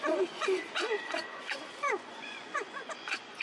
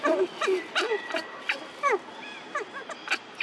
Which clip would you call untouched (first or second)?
second